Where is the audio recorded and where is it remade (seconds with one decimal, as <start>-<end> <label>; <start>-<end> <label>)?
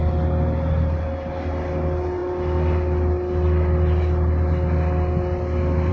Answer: 0.0-5.9 recorded